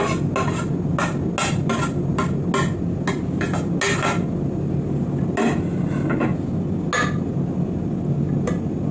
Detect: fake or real real